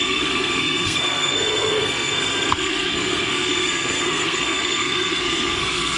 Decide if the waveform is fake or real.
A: fake